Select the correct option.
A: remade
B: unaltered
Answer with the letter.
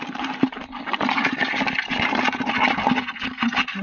B